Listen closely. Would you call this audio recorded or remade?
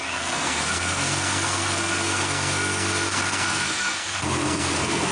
remade